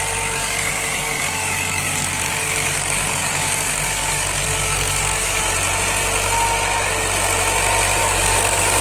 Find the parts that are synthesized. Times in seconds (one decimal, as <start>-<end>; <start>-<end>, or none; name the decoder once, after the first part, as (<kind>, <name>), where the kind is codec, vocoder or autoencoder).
0.4-5.4 (codec, DAC); 8.0-8.8